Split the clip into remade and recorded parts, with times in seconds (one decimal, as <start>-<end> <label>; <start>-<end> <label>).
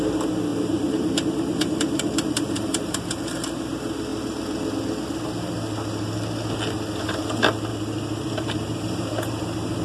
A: 0.0-0.5 recorded; 0.5-3.0 remade; 3.0-7.7 recorded; 7.7-9.8 remade